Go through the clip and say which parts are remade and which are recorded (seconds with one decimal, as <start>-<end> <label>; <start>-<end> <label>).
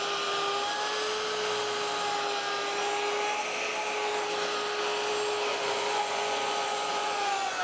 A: 0.0-5.5 recorded; 5.5-7.6 remade